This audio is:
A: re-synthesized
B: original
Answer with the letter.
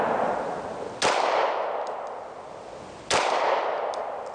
B